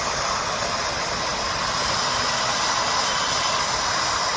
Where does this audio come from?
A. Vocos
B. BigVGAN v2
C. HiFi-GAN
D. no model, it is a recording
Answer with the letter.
D